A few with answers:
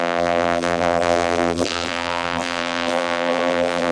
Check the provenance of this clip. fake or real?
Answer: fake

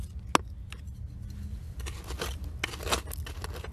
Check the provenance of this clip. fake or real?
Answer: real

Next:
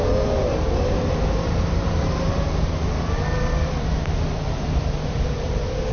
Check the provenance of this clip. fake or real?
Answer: fake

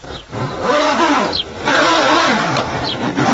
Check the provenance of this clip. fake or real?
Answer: fake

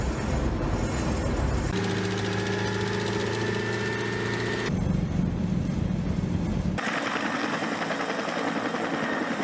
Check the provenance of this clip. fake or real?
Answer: real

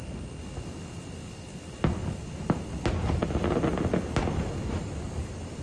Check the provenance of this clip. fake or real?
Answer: real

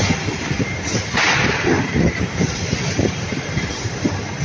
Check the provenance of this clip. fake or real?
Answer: fake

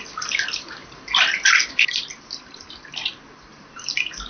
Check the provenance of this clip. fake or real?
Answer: real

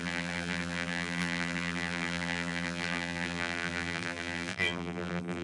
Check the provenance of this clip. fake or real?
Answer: fake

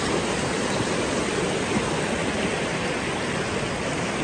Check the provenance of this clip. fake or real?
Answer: real